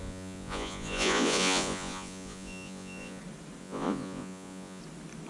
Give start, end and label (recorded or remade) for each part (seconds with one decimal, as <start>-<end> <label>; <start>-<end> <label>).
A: 0.0-3.2 remade; 3.2-3.6 recorded; 3.6-4.8 remade; 4.8-5.3 recorded